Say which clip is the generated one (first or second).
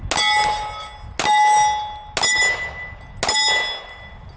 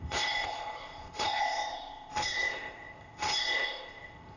second